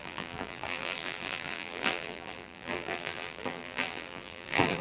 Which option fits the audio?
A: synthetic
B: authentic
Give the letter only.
A